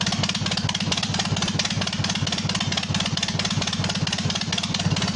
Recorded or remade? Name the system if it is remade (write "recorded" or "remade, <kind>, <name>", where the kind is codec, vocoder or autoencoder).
recorded